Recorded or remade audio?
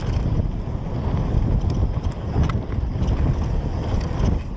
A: recorded